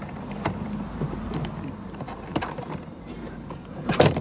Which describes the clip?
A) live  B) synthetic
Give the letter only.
B